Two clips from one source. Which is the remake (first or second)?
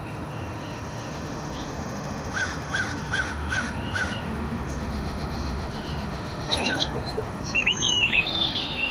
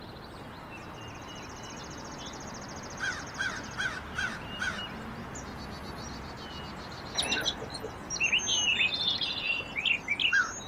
first